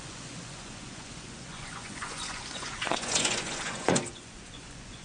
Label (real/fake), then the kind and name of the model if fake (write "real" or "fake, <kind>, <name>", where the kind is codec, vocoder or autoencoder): fake, vocoder, Vocos